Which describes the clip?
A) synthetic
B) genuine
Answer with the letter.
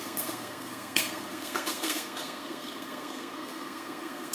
A